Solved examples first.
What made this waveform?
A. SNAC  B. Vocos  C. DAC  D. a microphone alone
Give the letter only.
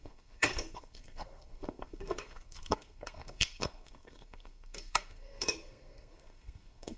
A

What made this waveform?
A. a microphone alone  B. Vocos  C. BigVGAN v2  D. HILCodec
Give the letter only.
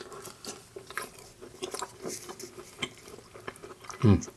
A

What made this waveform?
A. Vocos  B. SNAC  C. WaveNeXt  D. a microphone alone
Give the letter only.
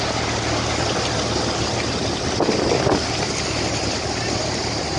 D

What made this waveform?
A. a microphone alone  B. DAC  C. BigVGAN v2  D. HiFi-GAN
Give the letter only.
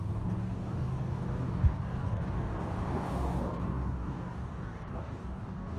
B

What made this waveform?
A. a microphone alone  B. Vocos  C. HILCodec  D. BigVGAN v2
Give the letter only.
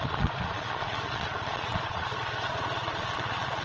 B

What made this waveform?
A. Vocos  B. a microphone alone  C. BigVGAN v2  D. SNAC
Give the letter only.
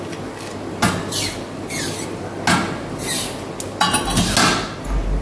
B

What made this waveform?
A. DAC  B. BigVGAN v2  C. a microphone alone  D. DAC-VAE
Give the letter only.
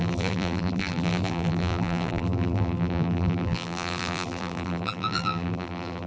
B